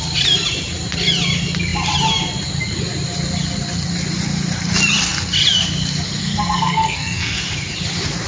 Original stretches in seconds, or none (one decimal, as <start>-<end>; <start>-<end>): 0.0-6.2; 7.4-8.3